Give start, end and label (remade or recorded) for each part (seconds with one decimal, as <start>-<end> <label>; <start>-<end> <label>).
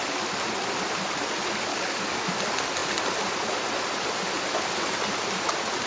0.0-1.7 recorded; 1.7-2.4 remade; 2.4-5.9 recorded